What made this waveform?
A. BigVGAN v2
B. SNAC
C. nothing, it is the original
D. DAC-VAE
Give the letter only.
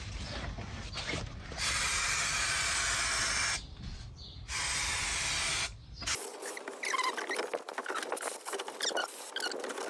C